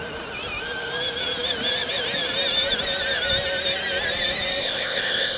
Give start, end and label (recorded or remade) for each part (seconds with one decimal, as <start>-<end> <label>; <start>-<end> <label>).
0.0-4.6 recorded; 4.6-5.4 remade